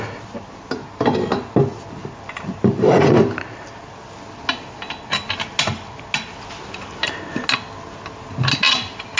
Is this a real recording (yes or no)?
yes